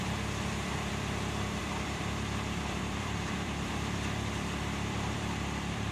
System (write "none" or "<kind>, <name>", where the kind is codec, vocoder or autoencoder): vocoder, BigVGAN v2